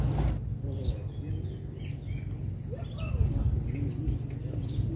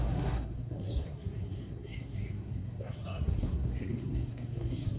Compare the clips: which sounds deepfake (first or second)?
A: second